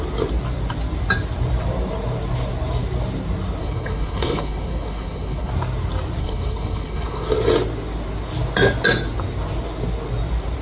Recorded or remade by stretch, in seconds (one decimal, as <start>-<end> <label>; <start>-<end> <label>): 0.0-3.6 recorded; 3.6-5.5 remade; 5.5-6.2 recorded; 6.2-7.3 remade; 7.3-10.6 recorded